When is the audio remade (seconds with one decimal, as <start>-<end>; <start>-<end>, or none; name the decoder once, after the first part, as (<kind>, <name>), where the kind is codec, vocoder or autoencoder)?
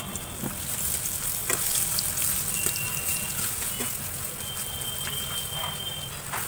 3.1-4.3 (vocoder, Vocos)